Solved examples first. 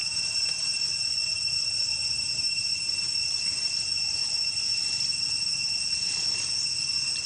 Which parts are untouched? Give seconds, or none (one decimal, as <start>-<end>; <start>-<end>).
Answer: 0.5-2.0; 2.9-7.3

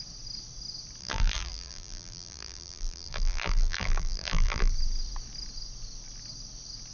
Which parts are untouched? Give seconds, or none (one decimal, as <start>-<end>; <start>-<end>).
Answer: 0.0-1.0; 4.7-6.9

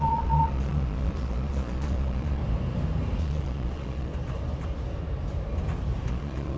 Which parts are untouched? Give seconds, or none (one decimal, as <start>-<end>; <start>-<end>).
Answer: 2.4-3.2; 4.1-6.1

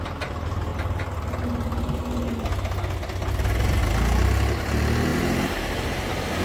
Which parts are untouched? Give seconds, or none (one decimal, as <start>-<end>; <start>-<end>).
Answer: 0.0-5.1